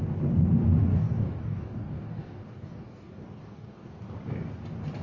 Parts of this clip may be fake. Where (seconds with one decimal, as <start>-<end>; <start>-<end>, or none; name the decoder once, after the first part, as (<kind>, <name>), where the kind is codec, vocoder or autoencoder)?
0.9-3.9 (codec, DAC)